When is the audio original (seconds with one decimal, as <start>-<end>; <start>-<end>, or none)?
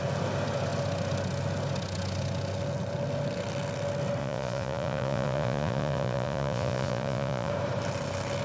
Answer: 0.0-4.2; 7.5-8.4